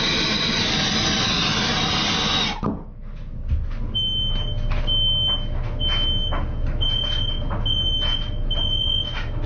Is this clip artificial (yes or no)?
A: no